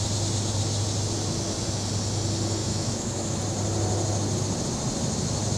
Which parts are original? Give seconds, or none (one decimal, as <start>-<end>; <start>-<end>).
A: 0.0-2.6; 3.4-5.6

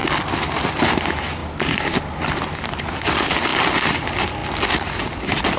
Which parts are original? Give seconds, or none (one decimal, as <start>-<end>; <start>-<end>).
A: 0.0-5.6

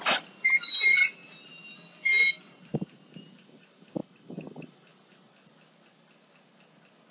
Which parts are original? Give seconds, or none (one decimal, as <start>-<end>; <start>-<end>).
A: 0.0-7.1

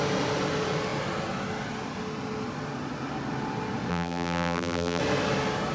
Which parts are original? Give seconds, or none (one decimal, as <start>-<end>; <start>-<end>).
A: 0.0-3.9; 5.0-5.7

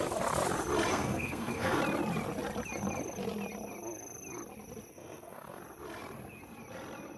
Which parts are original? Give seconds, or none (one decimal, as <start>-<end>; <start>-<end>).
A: 0.0-0.9; 1.8-4.9; 5.6-7.2

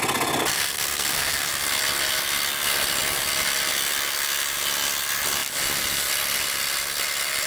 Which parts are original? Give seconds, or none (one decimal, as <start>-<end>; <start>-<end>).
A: 0.0-0.5; 1.5-7.5

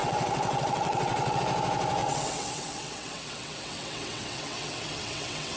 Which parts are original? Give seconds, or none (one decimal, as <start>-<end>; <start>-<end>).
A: 1.4-2.0